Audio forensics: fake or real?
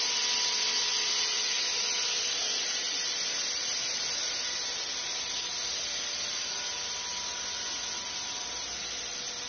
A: real